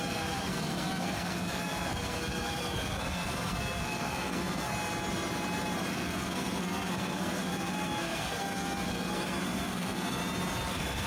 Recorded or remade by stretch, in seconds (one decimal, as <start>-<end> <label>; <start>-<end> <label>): 0.0-4.7 remade; 4.7-5.9 recorded; 5.9-10.2 remade; 10.2-10.7 recorded; 10.7-11.1 remade